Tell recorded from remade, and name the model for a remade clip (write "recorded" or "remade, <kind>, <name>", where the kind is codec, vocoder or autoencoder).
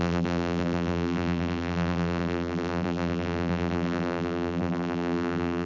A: remade, vocoder, BigVGAN v2